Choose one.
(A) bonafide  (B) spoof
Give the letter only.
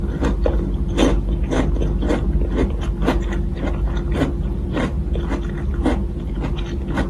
A